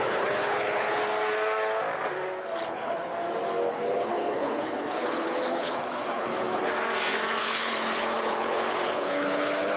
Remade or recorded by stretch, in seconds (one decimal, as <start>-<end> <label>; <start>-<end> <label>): 0.0-1.0 remade; 1.0-2.7 recorded; 2.7-3.1 remade; 3.1-3.7 recorded; 3.7-6.7 remade; 6.7-7.4 recorded; 7.4-9.8 remade